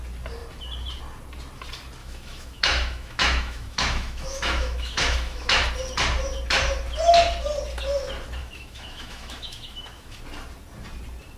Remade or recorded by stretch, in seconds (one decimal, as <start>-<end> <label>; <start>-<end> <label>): 0.0-2.0 recorded; 2.0-5.7 remade; 5.7-8.4 recorded; 8.4-10.2 remade; 10.2-11.4 recorded